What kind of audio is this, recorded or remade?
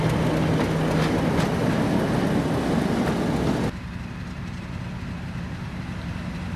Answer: recorded